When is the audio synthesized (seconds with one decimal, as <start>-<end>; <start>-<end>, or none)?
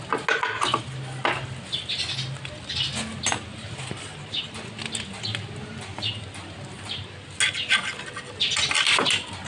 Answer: 3.5-4.0